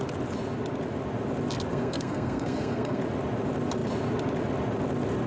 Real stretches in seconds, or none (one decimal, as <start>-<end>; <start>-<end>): 0.0-1.7; 3.0-5.3